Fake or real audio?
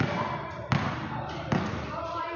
real